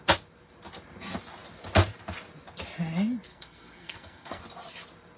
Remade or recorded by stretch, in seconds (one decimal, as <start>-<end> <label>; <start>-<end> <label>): 0.0-3.3 recorded; 3.3-4.4 remade; 4.4-5.2 recorded